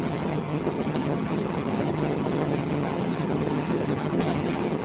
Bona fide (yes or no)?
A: no